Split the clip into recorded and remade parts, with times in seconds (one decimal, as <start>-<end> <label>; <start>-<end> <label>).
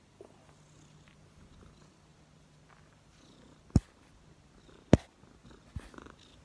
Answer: 0.0-6.4 recorded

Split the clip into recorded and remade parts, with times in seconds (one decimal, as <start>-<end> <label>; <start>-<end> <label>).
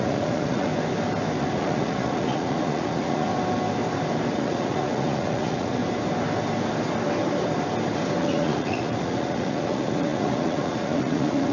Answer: 0.0-0.7 remade; 0.7-1.4 recorded; 1.4-3.3 remade; 3.3-4.3 recorded; 4.3-5.8 remade; 5.8-8.2 recorded; 8.2-11.5 remade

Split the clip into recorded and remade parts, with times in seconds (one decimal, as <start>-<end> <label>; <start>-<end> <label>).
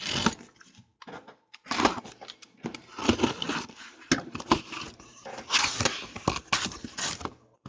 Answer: 0.0-7.7 recorded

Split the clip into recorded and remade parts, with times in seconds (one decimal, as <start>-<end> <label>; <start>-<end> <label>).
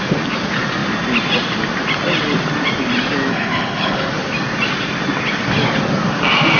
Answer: 0.0-3.3 recorded; 3.3-4.1 remade; 4.1-6.6 recorded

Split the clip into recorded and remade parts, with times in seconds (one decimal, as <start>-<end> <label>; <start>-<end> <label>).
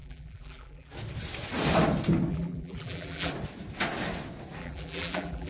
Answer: 0.0-0.9 remade; 0.9-2.3 recorded; 2.3-3.3 remade; 3.3-4.6 recorded; 4.6-5.5 remade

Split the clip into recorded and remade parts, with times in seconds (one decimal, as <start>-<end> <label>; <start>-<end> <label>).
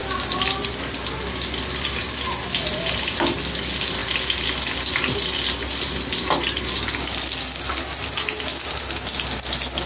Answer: 0.0-9.9 recorded